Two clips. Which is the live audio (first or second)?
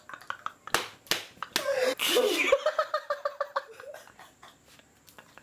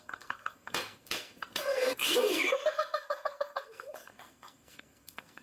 first